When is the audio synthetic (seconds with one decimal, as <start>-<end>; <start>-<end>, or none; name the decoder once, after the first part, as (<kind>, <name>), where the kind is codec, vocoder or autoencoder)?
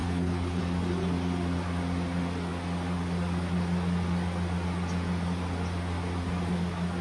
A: 0.0-0.6 (codec, HILCodec)